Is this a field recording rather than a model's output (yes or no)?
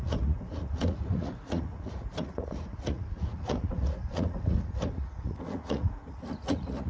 no